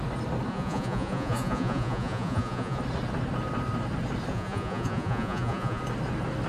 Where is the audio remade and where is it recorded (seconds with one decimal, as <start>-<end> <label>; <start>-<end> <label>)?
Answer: 0.0-0.5 recorded; 0.5-2.8 remade; 2.8-4.3 recorded; 4.3-5.8 remade; 5.8-6.5 recorded

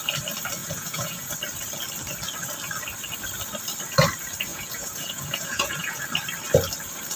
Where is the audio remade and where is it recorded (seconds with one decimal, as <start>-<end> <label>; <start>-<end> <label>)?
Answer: 0.0-0.6 recorded; 0.6-1.3 remade; 1.3-4.5 recorded; 4.5-6.0 remade; 6.0-7.2 recorded

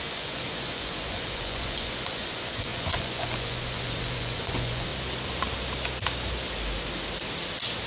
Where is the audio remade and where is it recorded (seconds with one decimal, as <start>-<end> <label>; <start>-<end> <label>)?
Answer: 0.0-4.9 remade; 4.9-7.9 recorded

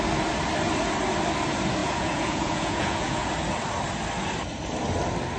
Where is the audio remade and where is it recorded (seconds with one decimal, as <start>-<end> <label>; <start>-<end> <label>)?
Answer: 0.0-1.8 recorded; 1.8-3.3 remade; 3.3-5.4 recorded